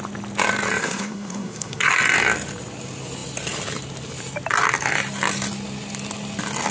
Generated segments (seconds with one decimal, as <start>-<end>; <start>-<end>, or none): 0.8-1.9